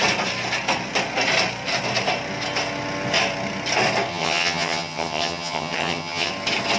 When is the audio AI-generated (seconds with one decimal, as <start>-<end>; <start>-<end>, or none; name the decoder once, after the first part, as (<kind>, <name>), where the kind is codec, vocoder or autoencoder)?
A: 4.1-6.3 (vocoder, HiFi-GAN)